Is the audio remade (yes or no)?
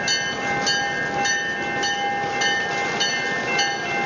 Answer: no